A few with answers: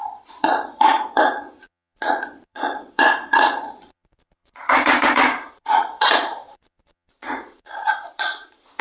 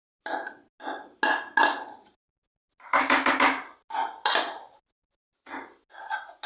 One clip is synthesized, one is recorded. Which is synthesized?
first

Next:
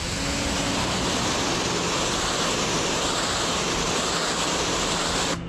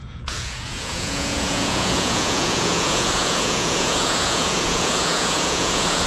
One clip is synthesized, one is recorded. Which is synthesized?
second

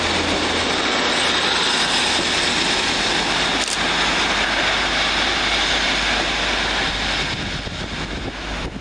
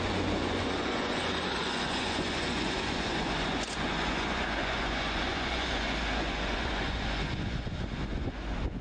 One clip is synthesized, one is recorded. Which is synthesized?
second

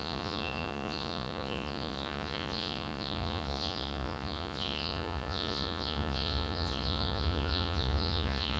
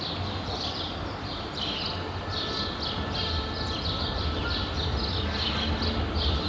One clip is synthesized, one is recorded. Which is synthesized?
first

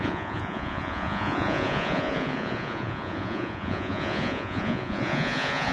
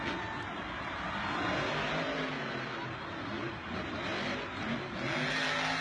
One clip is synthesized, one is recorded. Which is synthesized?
first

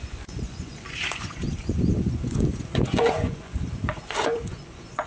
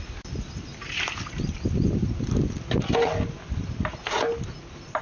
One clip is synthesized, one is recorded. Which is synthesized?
first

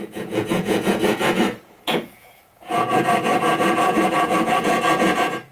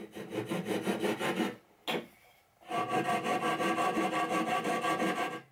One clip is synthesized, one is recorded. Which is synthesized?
first